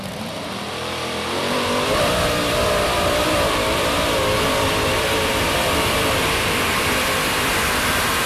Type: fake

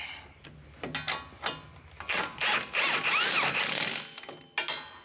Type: real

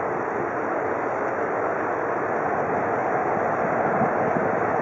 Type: real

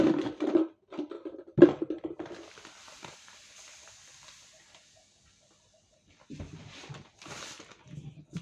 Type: fake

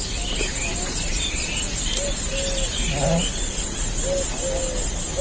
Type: real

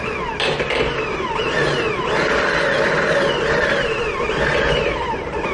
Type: real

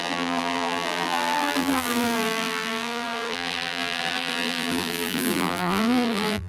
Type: fake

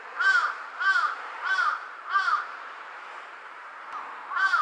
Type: fake